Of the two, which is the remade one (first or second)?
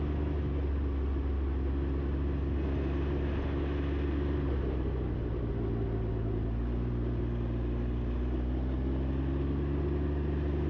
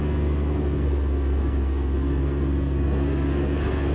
second